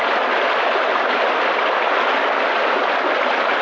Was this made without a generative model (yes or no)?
yes